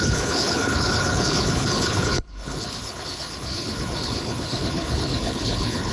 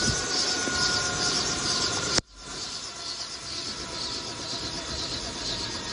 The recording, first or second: second